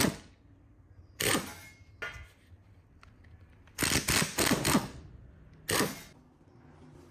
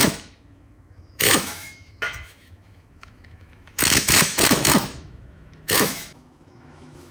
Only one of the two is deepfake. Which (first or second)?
second